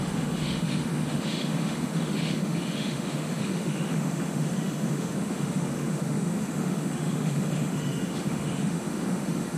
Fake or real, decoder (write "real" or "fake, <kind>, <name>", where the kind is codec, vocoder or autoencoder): fake, autoencoder, DAC-VAE